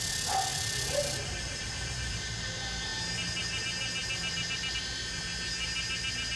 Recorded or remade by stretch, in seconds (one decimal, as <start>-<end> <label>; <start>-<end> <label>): 0.0-0.5 recorded; 0.5-2.4 remade; 2.4-4.0 recorded; 4.0-5.2 remade; 5.2-6.4 recorded